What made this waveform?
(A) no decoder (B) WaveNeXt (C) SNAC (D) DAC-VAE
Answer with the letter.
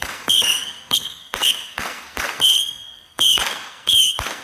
C